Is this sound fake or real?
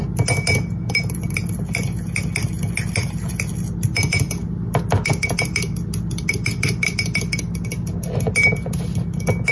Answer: real